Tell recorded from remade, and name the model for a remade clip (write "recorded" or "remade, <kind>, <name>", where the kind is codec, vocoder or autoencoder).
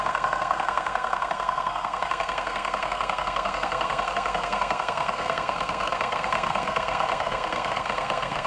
remade, codec, SNAC